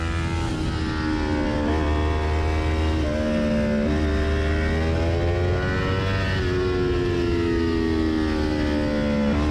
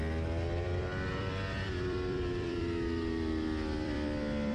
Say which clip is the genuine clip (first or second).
first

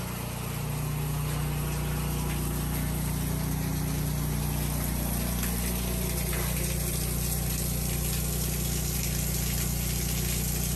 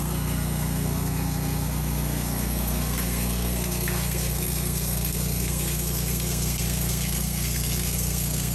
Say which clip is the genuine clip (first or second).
first